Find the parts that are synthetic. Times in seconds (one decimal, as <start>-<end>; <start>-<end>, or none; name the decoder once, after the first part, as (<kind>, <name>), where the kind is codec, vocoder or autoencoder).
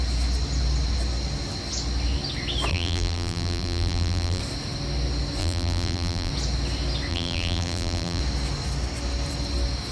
2.7-4.4 (vocoder, BigVGAN v2); 5.4-6.3; 7.1-8.2